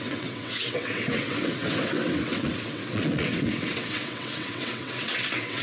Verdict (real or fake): fake